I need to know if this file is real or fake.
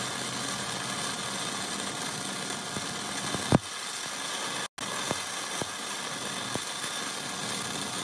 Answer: real